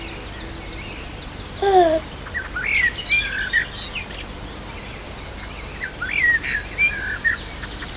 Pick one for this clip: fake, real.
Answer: real